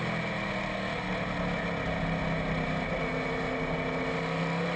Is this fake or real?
real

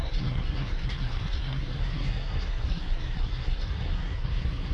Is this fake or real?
fake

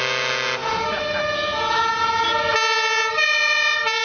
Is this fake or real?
real